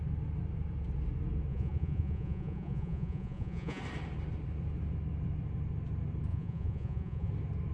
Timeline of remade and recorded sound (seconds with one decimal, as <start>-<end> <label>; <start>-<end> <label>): 0.0-1.5 recorded; 1.5-3.8 remade; 3.8-6.3 recorded; 6.3-7.3 remade; 7.3-7.7 recorded